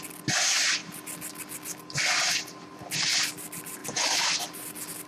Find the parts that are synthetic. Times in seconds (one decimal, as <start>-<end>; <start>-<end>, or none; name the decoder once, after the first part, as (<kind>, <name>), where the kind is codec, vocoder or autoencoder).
none